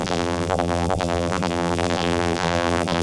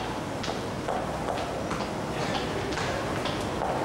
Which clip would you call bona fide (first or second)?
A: second